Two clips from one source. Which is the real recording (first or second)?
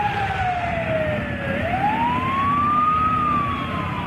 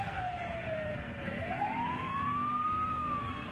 first